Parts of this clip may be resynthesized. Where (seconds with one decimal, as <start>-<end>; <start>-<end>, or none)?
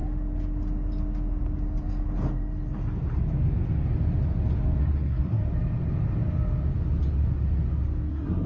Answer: 4.8-5.4; 8.1-8.5